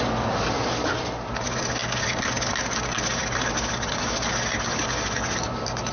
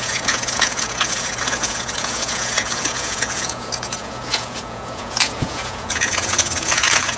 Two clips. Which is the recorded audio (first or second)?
first